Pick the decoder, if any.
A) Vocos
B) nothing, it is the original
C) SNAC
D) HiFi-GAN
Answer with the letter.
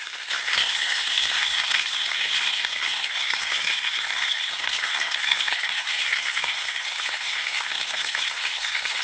C